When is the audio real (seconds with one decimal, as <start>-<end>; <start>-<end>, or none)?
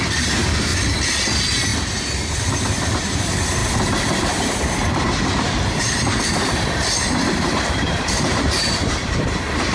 0.7-1.2; 1.7-2.3; 3.6-4.3